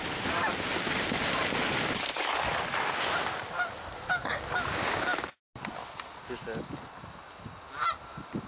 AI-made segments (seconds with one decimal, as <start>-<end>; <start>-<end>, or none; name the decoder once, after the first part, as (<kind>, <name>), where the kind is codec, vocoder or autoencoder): none